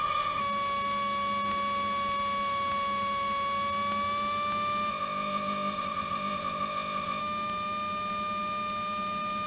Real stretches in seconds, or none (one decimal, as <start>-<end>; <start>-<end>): 0.4-4.9; 7.2-9.5